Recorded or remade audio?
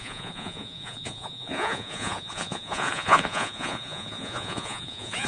remade